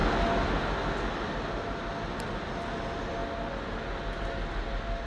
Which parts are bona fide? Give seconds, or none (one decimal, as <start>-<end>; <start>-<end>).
0.0-5.1